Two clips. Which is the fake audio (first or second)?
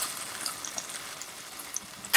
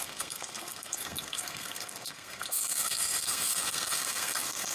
second